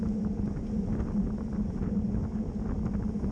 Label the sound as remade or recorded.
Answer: recorded